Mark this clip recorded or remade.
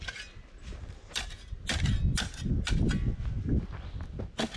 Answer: recorded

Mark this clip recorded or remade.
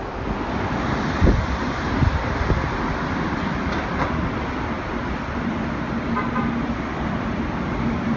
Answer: recorded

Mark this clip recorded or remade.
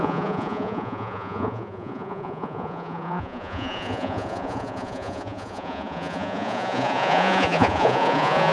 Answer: remade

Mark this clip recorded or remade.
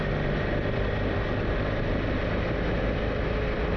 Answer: recorded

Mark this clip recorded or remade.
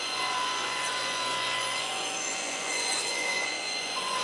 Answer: remade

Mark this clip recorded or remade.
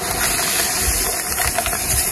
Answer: recorded